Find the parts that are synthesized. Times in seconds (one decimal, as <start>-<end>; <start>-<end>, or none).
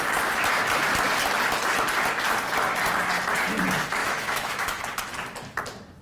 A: 4.0-4.8